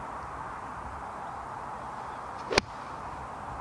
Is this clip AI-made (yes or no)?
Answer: no